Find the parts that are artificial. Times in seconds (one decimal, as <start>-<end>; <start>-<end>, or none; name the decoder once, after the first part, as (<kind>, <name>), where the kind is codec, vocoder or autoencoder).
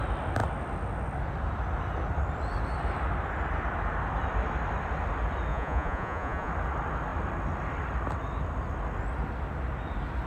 5.5-6.5 (vocoder, Vocos)